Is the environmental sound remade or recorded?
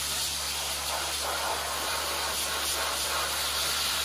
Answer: remade